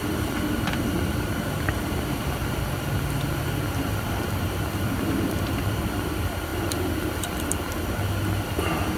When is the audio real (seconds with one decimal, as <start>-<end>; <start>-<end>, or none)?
0.0-9.0